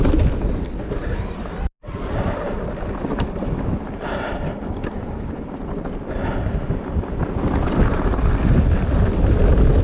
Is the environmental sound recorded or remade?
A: recorded